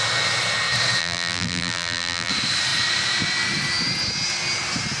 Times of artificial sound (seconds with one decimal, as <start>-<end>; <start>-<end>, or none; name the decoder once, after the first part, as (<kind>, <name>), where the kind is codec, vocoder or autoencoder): 1.0-2.3 (vocoder, BigVGAN v2)